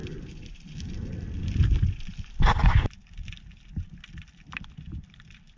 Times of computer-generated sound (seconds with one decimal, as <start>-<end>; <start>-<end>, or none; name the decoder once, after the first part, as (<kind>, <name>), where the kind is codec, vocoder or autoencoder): none